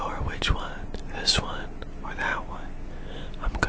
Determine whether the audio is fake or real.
real